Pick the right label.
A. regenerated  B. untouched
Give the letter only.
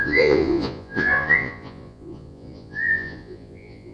A